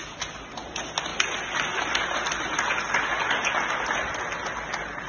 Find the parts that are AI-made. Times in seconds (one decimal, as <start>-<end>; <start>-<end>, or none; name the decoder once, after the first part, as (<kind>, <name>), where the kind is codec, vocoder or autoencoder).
none